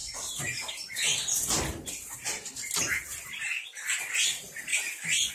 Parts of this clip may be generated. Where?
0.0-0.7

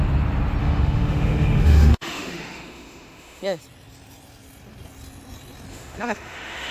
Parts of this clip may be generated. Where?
0.6-3.6; 5.7-6.7